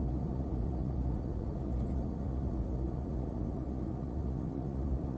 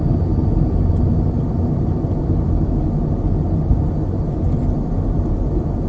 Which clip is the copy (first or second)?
first